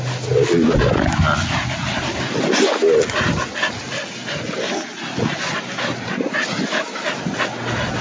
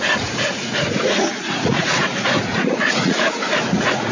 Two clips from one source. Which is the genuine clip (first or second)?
first